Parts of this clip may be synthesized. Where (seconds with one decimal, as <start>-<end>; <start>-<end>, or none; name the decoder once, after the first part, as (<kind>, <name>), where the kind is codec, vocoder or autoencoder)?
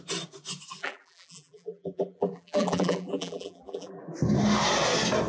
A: 0.8-4.0 (vocoder, BigVGAN v2)